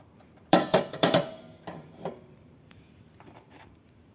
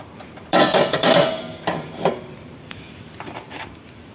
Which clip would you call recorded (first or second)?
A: second